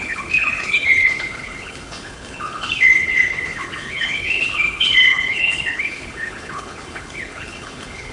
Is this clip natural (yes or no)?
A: no